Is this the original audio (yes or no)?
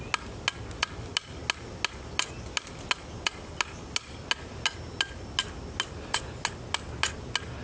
yes